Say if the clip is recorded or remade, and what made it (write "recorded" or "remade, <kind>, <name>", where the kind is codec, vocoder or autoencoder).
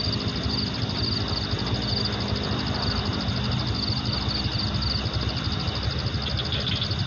recorded